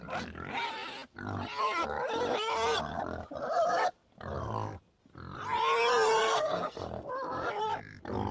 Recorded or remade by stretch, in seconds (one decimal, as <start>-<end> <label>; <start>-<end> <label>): 0.0-6.2 recorded; 6.2-7.1 remade; 7.1-8.3 recorded